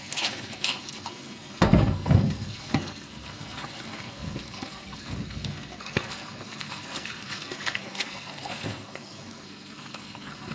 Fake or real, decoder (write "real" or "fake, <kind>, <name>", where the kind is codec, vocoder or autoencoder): fake, codec, SNAC